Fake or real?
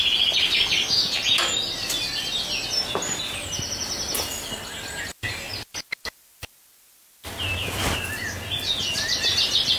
real